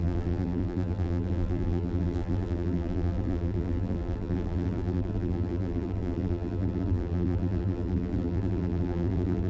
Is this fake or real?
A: fake